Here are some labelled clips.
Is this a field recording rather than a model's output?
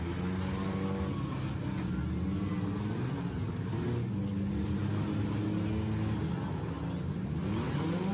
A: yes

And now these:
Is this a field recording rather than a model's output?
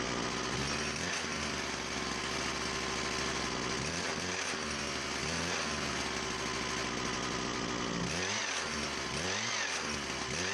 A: yes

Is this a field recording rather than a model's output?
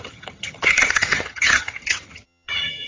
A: no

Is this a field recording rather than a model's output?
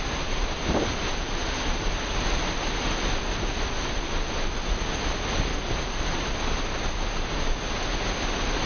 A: yes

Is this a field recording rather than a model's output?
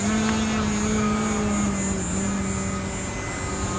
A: yes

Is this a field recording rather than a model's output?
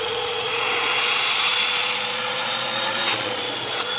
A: no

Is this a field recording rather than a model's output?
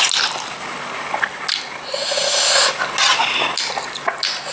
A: yes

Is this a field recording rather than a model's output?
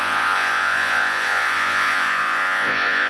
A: no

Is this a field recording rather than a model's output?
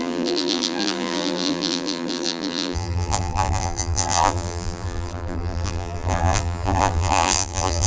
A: no